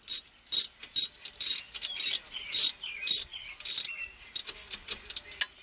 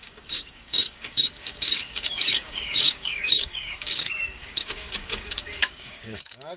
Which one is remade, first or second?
second